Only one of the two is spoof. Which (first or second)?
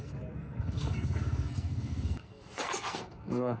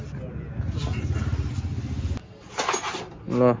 first